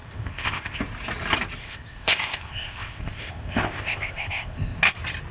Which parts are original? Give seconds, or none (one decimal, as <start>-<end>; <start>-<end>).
0.8-1.6; 4.8-5.3